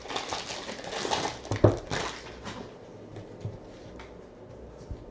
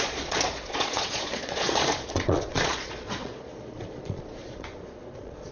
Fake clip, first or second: second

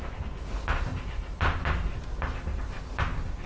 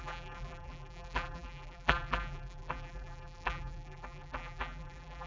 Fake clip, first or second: second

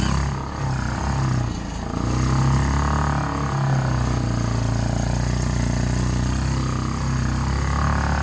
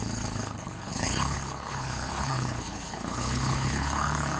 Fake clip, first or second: second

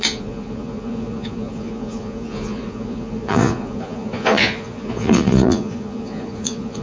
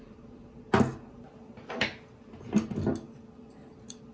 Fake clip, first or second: first